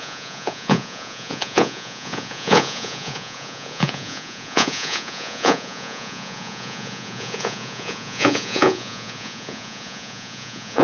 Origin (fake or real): fake